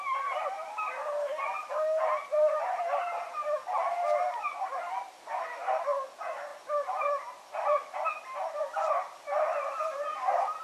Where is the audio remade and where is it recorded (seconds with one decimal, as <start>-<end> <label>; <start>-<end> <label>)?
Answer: 0.0-10.6 recorded